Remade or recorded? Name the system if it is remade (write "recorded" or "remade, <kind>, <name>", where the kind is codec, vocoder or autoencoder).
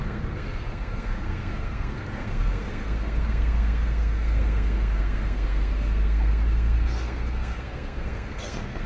remade, codec, SNAC